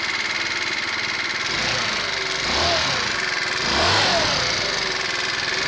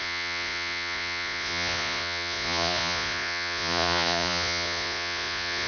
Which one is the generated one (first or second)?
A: second